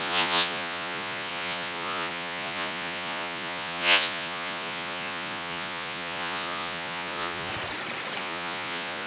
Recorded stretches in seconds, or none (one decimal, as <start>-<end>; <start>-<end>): 7.5-8.2